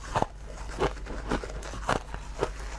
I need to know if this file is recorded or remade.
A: recorded